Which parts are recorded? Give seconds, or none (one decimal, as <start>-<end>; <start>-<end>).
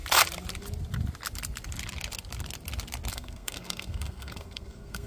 0.0-3.1